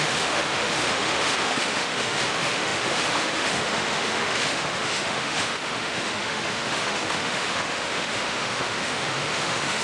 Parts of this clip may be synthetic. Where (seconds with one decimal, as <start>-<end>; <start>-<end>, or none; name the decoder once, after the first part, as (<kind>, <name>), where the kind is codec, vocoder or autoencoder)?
0.0-9.8 (autoencoder, DAC-VAE)